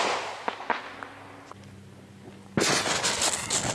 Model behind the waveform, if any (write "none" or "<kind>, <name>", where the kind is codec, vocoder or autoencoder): none